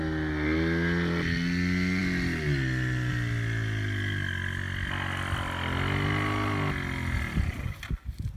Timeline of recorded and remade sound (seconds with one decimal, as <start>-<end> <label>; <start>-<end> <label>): 0.0-8.4 recorded

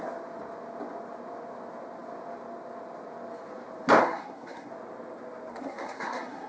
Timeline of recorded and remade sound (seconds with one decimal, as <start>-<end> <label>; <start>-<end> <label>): 0.0-4.0 recorded; 4.0-4.7 remade; 4.7-5.5 recorded; 5.5-6.5 remade

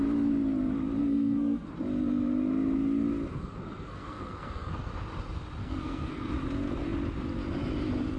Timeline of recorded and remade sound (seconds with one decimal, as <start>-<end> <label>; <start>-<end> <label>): 0.0-1.0 recorded; 1.0-1.7 remade; 1.7-3.3 recorded; 3.3-4.9 remade; 4.9-5.6 recorded; 5.6-6.3 remade; 6.3-8.2 recorded

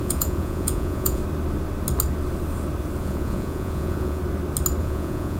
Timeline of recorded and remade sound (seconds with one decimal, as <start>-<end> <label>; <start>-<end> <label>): 0.0-1.2 remade; 1.2-3.0 recorded; 3.0-4.2 remade; 4.2-4.8 recorded; 4.8-5.4 remade

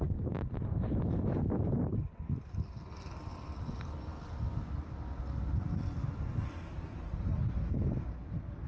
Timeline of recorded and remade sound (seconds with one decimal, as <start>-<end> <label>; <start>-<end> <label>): 0.0-8.7 recorded

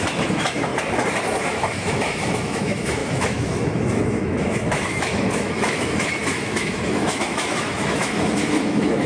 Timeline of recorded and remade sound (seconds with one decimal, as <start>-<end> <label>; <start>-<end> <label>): 0.0-0.7 remade; 0.7-1.4 recorded; 1.4-9.1 remade